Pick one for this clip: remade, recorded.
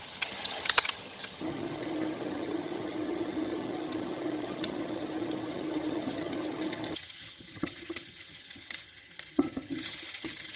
remade